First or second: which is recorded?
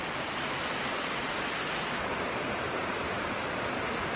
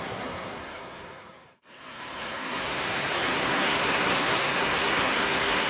first